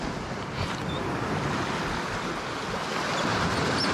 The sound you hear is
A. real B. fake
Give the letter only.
A